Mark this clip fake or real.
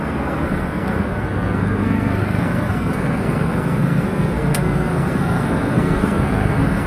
fake